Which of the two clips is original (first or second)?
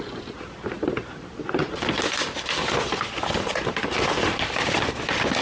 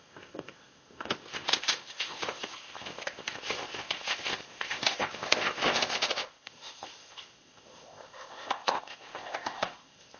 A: first